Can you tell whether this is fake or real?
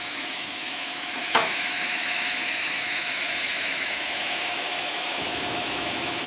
fake